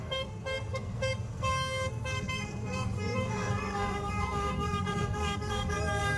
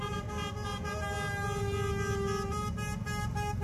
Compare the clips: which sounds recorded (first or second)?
second